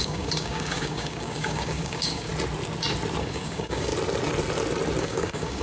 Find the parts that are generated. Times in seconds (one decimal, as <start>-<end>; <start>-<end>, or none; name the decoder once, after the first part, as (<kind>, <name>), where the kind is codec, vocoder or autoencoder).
0.0-2.3 (codec, DAC); 3.2-3.9; 5.0-5.6